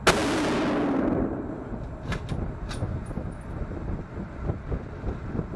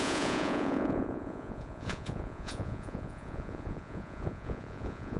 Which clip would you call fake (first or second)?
second